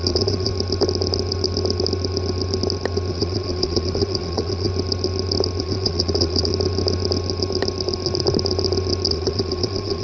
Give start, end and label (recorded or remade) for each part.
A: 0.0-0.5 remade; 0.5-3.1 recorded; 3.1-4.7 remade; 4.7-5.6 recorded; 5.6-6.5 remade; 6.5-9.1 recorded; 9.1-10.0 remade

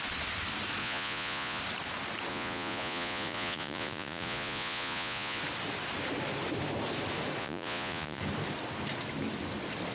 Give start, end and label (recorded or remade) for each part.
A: 0.0-0.8 recorded; 0.8-1.6 remade; 1.6-2.3 recorded; 2.3-5.4 remade; 5.4-7.4 recorded; 7.4-8.2 remade; 8.2-9.9 recorded

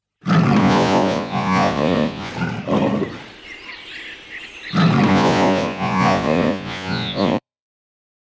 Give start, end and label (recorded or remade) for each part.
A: 0.0-0.6 recorded; 0.6-2.3 remade; 2.3-5.1 recorded; 5.1-8.4 remade

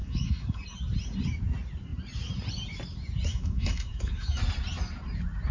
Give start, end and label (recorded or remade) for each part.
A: 0.0-0.6 remade; 0.6-3.3 recorded; 3.3-4.4 remade; 4.4-5.5 recorded